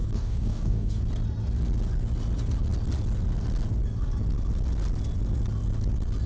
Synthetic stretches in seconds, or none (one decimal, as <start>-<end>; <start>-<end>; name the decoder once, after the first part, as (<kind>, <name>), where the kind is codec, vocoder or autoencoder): 0.0-1.0 (codec, DAC)